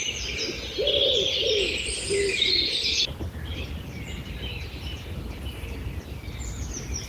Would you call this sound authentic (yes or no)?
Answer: yes